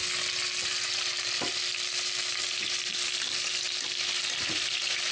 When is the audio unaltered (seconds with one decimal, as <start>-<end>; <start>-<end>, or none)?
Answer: 0.0-5.1